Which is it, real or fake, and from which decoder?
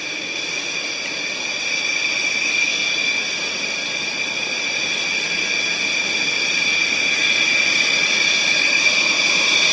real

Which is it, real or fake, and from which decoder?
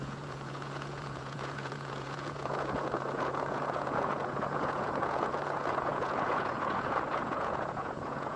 fake, vocoder, Vocos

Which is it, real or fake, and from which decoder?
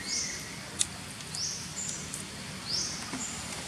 real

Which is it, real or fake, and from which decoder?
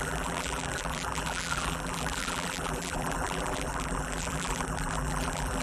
fake, vocoder, BigVGAN v2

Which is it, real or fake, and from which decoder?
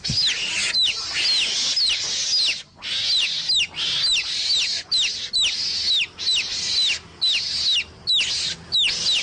real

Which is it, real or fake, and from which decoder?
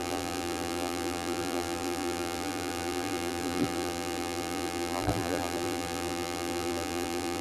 fake, vocoder, BigVGAN v2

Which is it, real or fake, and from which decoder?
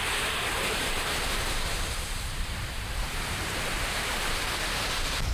fake, vocoder, BigVGAN v2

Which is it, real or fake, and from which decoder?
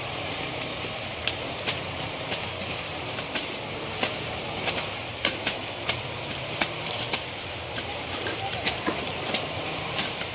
fake, vocoder, BigVGAN v2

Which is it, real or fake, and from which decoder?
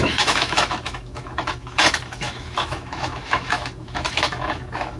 fake, autoencoder, DAC-VAE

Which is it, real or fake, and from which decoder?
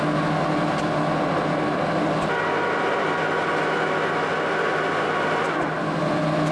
real